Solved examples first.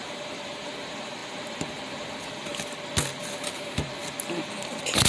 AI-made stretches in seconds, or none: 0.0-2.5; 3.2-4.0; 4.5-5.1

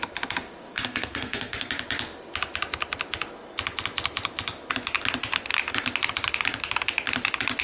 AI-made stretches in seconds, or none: 0.7-1.7

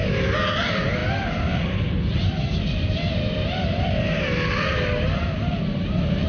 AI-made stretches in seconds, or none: none

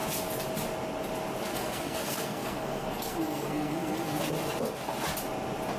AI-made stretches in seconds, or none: 1.5-4.2

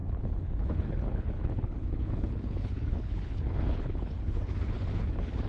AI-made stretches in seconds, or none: 0.0-5.5

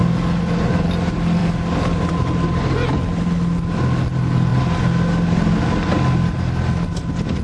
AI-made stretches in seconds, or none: none

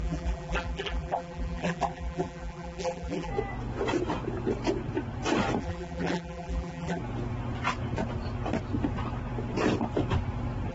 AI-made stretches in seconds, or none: 0.0-3.3; 5.6-7.0

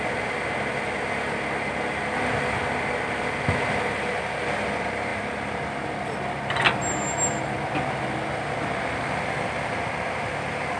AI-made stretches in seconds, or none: none